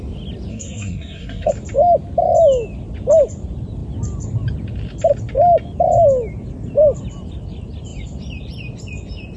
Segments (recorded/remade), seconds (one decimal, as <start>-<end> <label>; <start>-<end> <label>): 0.0-0.5 recorded; 0.5-1.5 remade; 1.5-9.4 recorded